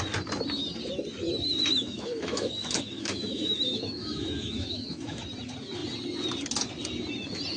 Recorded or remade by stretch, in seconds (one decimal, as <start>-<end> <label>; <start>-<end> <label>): 0.0-1.7 recorded; 1.7-5.2 remade; 5.2-7.6 recorded